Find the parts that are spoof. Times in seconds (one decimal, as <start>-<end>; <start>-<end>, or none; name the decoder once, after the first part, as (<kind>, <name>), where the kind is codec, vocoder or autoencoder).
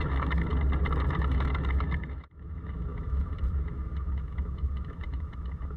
0.0-0.5 (autoencoder, DAC-VAE); 1.1-5.8